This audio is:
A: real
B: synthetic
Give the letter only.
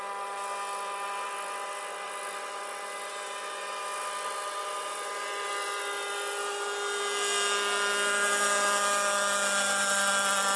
A